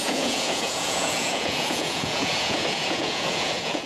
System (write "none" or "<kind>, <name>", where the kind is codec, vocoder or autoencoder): vocoder, Vocos